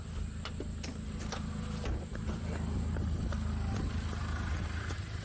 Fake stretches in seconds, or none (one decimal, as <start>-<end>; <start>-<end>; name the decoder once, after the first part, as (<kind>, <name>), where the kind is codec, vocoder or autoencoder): 2.1-2.9 (vocoder, BigVGAN v2)